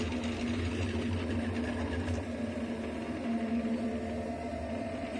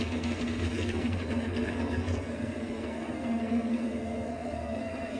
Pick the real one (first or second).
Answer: first